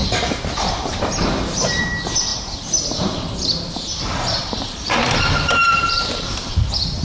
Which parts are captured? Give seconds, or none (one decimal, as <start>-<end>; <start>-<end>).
1.8-2.3; 6.5-7.0